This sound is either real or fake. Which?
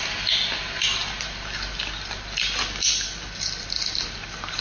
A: real